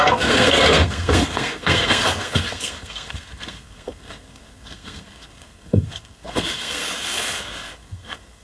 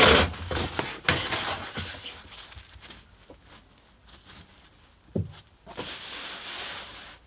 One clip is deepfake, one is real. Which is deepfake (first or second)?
first